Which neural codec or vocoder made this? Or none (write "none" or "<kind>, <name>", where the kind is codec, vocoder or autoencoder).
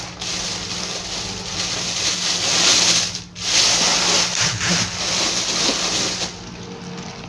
none